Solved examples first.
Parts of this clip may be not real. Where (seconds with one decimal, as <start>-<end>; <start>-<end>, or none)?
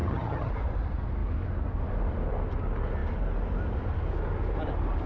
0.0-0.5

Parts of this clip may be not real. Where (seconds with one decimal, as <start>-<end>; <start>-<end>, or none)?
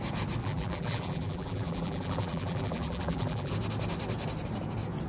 0.4-3.5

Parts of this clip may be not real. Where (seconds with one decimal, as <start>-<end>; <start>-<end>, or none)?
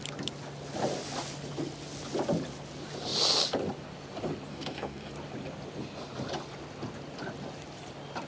4.5-5.1